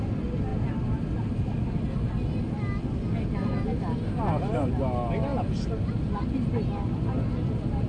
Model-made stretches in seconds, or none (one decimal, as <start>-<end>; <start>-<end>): none

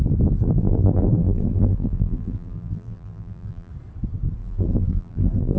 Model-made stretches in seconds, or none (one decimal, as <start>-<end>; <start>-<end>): 0.4-3.7; 4.4-5.6

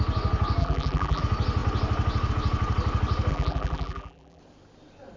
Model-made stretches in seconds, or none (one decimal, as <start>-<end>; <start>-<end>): 0.6-1.2; 3.3-4.4

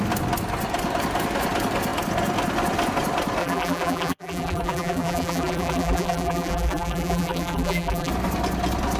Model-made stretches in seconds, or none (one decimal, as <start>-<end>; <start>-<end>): 3.4-8.1

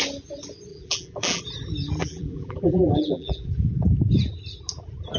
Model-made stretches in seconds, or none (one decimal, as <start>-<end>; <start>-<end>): 0.7-1.4; 2.0-3.5

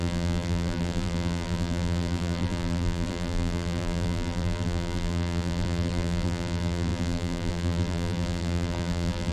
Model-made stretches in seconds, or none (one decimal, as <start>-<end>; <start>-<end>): 0.0-9.3

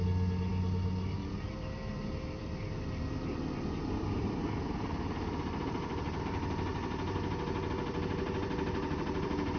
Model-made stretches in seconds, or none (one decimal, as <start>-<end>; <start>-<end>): 0.0-6.7; 7.7-9.6